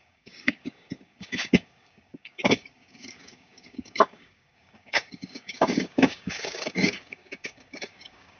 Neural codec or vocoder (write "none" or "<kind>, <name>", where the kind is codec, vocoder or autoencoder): codec, DAC